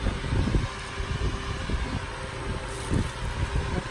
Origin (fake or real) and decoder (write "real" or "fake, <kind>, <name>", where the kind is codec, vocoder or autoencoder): real